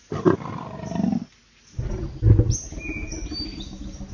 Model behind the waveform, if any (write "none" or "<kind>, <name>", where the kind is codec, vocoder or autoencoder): none